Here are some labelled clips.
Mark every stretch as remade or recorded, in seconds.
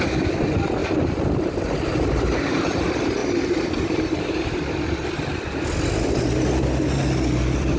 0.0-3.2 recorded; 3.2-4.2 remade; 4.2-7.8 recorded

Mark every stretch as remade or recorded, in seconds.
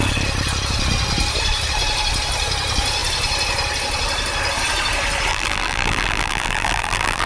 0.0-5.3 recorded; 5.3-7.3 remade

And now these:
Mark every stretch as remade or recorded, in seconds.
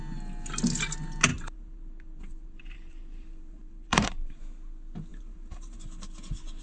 0.0-1.3 recorded; 1.3-4.4 remade; 4.4-5.1 recorded; 5.1-5.8 remade; 5.8-6.6 recorded